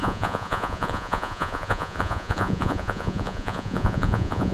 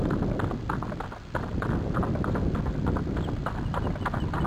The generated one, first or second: first